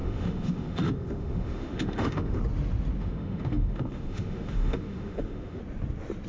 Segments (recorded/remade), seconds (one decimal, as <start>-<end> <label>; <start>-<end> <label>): 0.0-2.4 remade; 2.4-3.0 recorded; 3.0-5.6 remade; 5.6-6.3 recorded